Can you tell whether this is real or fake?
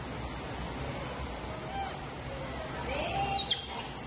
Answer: real